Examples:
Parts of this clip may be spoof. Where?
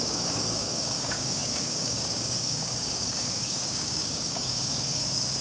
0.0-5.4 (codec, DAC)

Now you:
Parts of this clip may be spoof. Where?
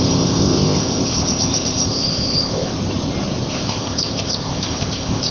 0.0-2.7 (codec, ZipCodec); 3.5-5.3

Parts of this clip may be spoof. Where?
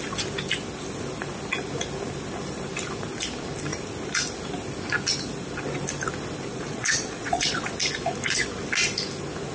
6.5-7.7 (vocoder, Vocos)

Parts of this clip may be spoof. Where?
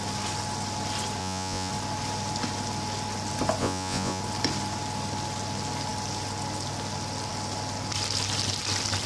1.2-1.7 (vocoder, Vocos); 3.6-4.2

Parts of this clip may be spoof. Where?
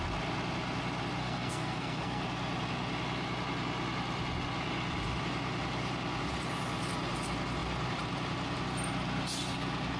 1.2-2.2 (codec, SNAC)